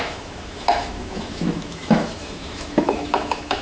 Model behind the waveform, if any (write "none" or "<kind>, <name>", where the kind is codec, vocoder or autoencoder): autoencoder, DAC-VAE